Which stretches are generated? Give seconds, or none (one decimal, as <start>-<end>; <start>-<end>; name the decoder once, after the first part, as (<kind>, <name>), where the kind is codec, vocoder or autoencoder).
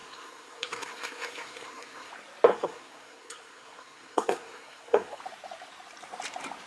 0.0-2.1 (codec, SNAC); 2.5-5.2